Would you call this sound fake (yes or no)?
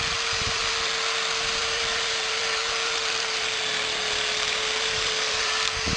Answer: yes